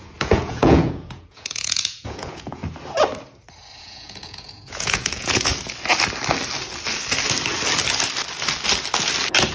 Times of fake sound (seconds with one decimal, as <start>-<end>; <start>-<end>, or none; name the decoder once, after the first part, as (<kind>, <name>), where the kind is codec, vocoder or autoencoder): 0.0-2.6 (vocoder, Vocos); 3.8-5.5